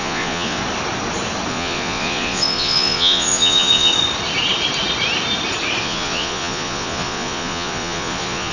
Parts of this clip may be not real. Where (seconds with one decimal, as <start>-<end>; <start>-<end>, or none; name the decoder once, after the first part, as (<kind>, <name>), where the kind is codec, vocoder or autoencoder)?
0.0-0.6 (vocoder, Vocos); 1.5-3.9; 5.8-8.5